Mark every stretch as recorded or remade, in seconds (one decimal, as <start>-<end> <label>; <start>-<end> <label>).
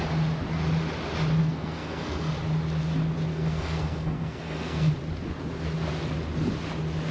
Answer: 0.0-1.4 recorded; 1.4-2.3 remade; 2.3-3.3 recorded; 3.3-4.9 remade; 4.9-7.1 recorded